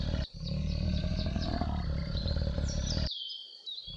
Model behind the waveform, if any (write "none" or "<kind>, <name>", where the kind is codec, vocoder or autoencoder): vocoder, BigVGAN v2